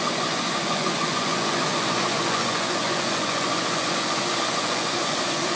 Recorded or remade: remade